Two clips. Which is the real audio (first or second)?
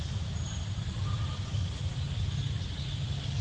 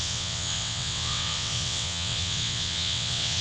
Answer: first